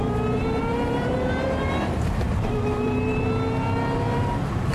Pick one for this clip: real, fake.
fake